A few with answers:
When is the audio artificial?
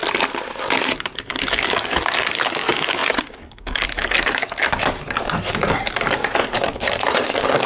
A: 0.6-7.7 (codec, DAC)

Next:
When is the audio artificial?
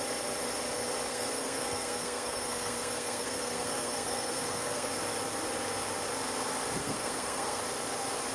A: 1.1-4.9 (codec, SNAC); 6.8-7.6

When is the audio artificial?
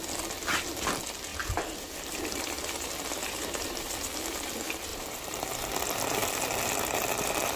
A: 1.3-2.4 (vocoder, BigVGAN v2); 3.2-3.9; 4.9-5.7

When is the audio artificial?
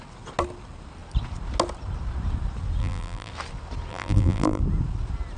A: 2.8-3.3 (vocoder, BigVGAN v2); 3.9-4.6